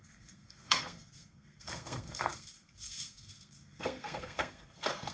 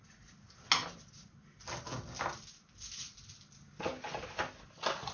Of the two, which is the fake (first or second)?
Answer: first